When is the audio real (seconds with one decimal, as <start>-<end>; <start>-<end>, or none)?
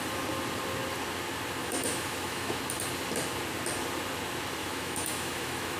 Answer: 0.0-1.6; 2.6-4.6